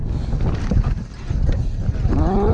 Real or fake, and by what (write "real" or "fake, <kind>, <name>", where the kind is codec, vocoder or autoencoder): real